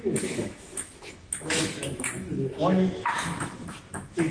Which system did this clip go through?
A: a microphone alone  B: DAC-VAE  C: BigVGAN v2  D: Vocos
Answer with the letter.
B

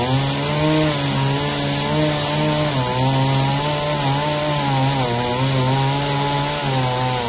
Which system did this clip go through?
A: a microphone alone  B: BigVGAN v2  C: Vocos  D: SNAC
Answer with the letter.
A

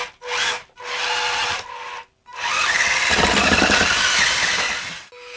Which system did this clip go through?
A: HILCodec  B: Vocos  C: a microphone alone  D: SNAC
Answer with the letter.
C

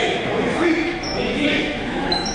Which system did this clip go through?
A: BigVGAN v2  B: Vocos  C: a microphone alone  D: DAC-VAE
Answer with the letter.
D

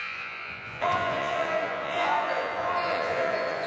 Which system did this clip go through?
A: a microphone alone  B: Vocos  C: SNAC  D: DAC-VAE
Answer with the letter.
B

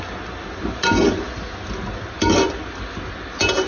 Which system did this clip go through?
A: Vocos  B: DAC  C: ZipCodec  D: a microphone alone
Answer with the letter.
D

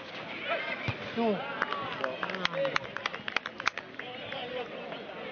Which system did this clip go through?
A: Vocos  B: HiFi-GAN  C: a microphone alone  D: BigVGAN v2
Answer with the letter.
C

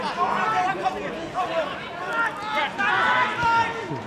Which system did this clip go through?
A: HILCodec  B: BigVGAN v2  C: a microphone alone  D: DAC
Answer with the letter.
C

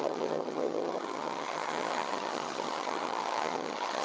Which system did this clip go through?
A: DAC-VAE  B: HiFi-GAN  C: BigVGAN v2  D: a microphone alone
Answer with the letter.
B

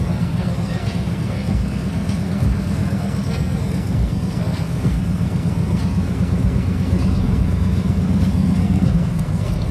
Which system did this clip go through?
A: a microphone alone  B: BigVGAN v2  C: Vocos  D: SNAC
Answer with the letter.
D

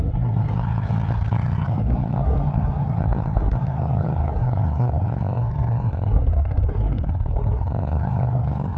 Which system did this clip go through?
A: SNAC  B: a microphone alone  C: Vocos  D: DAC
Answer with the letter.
A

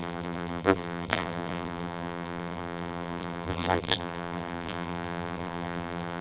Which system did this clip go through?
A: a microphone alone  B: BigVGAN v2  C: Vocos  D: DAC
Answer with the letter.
B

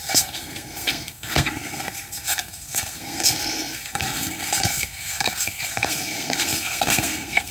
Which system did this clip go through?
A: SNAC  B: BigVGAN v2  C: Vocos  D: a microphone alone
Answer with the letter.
A